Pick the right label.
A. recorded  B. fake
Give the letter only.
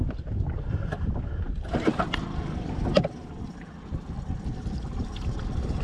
A